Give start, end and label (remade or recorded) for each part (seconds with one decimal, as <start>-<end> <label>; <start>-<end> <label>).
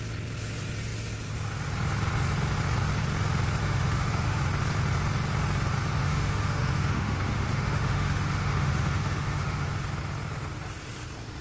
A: 0.0-3.6 recorded; 3.6-4.4 remade; 4.4-6.0 recorded; 6.0-9.7 remade; 9.7-11.4 recorded